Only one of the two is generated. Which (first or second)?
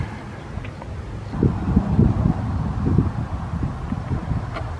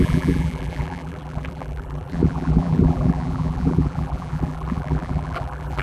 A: second